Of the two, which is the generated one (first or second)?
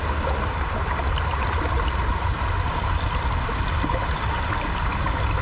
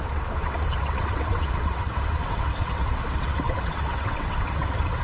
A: second